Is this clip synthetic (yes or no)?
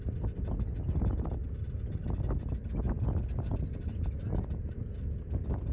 no